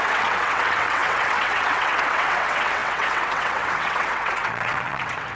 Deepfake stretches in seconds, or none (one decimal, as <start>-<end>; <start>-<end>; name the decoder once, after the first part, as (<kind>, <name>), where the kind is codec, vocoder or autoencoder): 0.0-5.3 (vocoder, WaveNeXt)